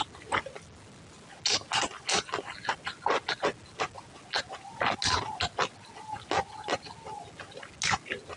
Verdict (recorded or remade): recorded